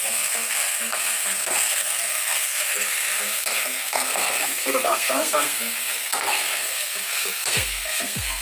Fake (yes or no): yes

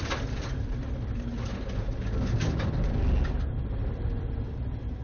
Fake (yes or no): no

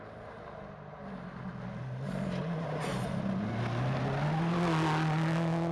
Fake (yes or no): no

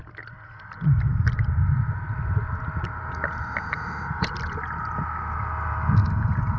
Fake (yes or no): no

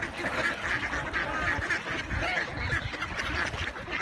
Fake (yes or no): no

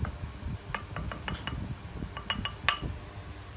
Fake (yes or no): no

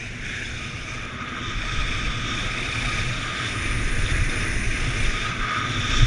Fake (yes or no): no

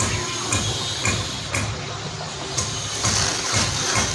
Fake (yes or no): no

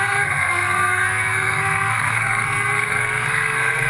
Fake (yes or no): yes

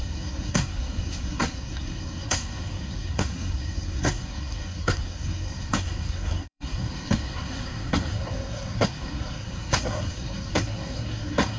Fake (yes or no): yes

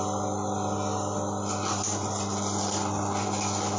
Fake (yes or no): no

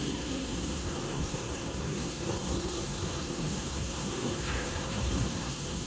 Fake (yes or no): yes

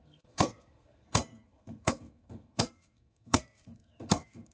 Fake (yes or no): yes